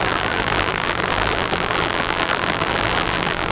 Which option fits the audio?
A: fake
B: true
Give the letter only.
A